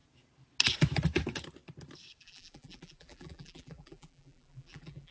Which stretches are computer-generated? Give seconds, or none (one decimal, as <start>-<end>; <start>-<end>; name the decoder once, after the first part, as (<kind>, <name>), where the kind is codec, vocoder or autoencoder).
2.2-5.1 (vocoder, BigVGAN v2)